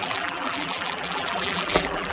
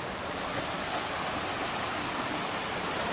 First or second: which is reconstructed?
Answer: first